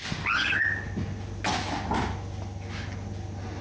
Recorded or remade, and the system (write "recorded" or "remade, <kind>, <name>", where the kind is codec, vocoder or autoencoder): recorded